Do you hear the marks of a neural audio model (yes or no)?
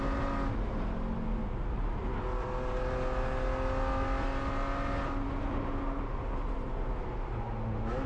no